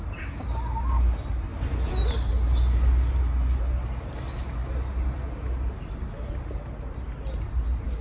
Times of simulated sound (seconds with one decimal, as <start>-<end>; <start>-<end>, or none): none